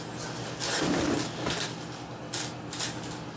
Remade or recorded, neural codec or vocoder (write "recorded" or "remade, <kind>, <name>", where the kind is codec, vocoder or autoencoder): recorded